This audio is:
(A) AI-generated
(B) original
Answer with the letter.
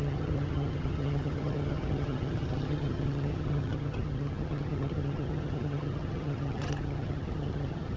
A